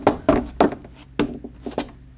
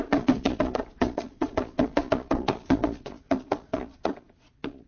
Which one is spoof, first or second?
second